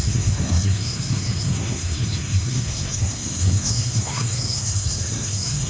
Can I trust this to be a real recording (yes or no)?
no